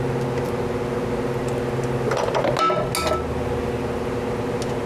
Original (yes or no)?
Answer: yes